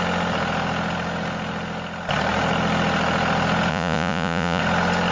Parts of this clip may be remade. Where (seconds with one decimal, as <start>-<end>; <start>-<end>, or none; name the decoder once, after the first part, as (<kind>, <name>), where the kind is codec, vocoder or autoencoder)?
3.7-4.6 (vocoder, Vocos)